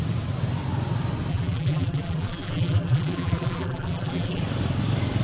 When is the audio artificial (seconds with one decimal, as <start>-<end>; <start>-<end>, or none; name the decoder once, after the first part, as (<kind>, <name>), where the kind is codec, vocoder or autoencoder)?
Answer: 1.3-4.4 (vocoder, BigVGAN v2)